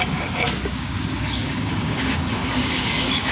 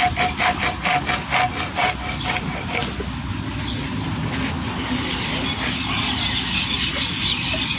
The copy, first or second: first